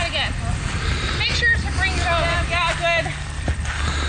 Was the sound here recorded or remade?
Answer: recorded